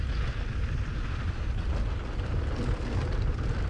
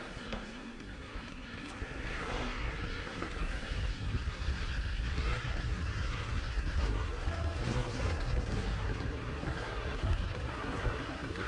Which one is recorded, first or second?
first